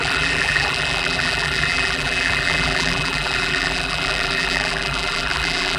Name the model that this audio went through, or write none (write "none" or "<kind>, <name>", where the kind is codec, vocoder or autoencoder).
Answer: vocoder, BigVGAN v2